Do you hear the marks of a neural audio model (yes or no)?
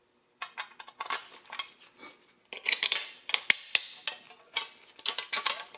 no